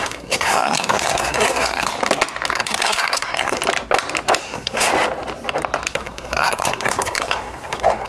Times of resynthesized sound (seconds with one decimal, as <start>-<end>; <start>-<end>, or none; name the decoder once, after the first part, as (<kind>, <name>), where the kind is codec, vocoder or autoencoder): 0.0-1.9 (codec, SNAC); 2.5-3.6; 4.4-4.9; 5.9-8.1